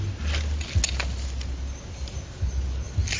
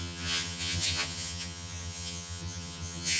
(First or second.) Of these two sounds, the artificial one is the second